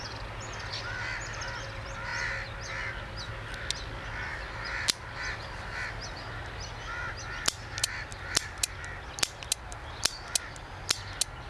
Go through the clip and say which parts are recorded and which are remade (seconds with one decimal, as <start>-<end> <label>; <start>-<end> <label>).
0.0-11.5 recorded